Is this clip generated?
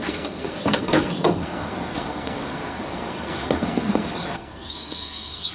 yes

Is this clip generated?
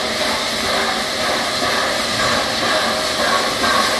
no